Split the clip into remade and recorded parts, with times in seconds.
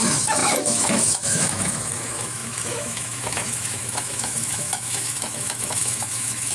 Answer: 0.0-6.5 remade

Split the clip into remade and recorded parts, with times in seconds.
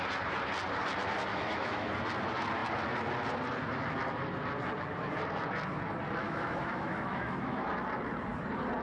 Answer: 0.0-1.3 recorded; 1.3-1.9 remade; 1.9-6.2 recorded; 6.2-7.6 remade; 7.6-8.8 recorded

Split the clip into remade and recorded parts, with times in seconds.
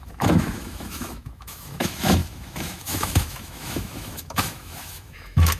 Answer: 0.0-5.6 remade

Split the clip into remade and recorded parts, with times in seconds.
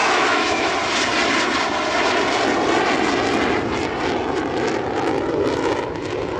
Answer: 0.0-0.7 remade; 0.7-6.4 recorded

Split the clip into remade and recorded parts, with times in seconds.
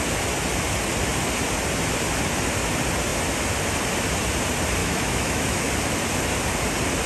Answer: 0.0-4.8 recorded; 4.8-5.7 remade; 5.7-7.1 recorded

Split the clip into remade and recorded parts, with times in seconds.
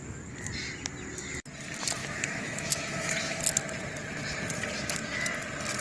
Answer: 0.0-2.0 recorded; 2.0-3.4 remade; 3.4-5.8 recorded